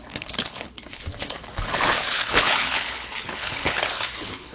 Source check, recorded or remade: remade